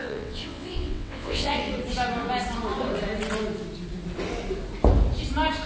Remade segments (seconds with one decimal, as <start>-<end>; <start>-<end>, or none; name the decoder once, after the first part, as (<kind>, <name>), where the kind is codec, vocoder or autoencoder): 0.0-1.7 (vocoder, WaveNeXt)